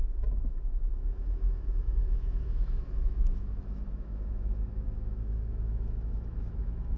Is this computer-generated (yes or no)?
yes